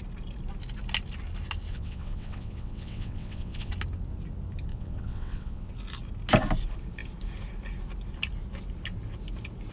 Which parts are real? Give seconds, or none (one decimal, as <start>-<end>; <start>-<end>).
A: 0.0-1.7; 3.7-4.7; 5.7-9.7